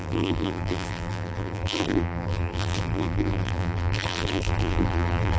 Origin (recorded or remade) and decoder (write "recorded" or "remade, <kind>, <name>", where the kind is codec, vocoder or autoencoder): remade, vocoder, BigVGAN v2